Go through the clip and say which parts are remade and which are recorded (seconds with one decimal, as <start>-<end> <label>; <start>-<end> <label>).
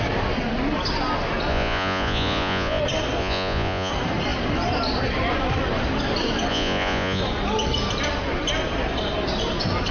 0.0-1.5 recorded; 1.5-2.8 remade; 2.8-3.2 recorded; 3.2-3.9 remade; 3.9-6.5 recorded; 6.5-7.2 remade; 7.2-9.9 recorded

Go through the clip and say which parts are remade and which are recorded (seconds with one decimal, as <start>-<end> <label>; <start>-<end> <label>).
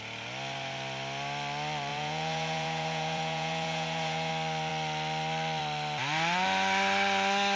0.0-1.9 recorded; 1.9-4.3 remade; 4.3-7.6 recorded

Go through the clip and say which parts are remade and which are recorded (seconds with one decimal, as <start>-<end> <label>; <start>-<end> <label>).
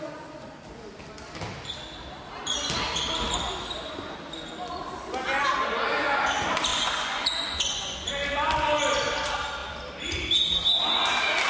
0.0-6.7 recorded; 6.7-8.1 remade; 8.1-11.5 recorded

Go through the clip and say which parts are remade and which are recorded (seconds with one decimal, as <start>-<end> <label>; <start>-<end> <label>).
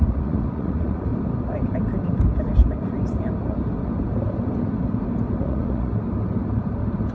0.0-1.1 remade; 1.1-5.4 recorded; 5.4-5.9 remade; 5.9-7.1 recorded